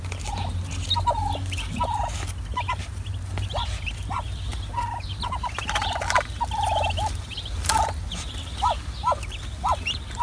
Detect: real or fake real